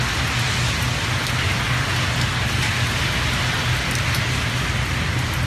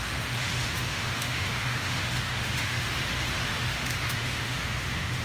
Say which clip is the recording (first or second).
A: first